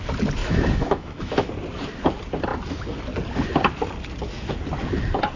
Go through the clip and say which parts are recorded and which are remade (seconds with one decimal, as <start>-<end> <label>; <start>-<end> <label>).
0.0-0.4 recorded; 0.4-1.5 remade; 1.5-5.4 recorded